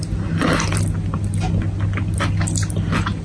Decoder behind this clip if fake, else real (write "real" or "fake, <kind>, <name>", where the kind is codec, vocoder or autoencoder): real